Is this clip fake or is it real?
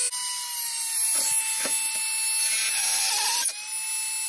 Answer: real